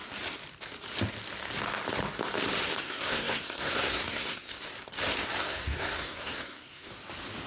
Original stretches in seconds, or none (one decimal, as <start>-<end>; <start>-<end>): 0.0-2.8; 4.7-5.4; 6.9-7.5